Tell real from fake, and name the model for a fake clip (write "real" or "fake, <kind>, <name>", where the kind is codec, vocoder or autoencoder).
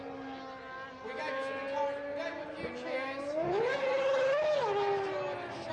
real